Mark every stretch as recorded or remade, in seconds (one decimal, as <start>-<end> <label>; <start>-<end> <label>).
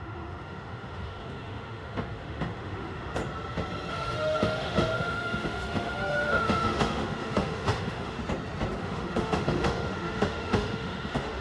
0.0-3.2 remade; 3.2-3.9 recorded; 3.9-8.2 remade; 8.2-8.8 recorded; 8.8-11.4 remade